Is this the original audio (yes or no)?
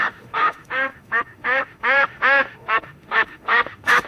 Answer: no